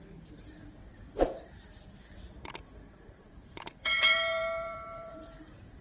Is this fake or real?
fake